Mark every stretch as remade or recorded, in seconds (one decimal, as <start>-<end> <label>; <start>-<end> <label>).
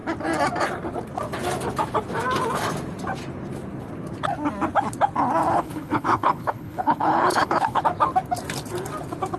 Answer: 0.0-5.5 recorded; 5.5-7.8 remade; 7.8-9.4 recorded